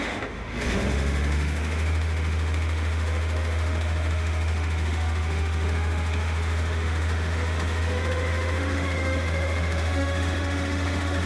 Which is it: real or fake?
fake